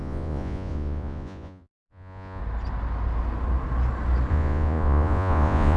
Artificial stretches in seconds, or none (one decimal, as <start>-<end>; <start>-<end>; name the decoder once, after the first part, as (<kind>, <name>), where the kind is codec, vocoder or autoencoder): 0.0-2.4 (vocoder, Vocos); 4.3-5.8